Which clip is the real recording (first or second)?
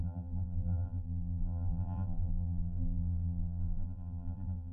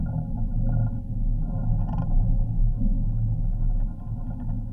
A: second